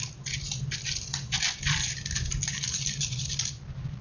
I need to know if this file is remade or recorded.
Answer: recorded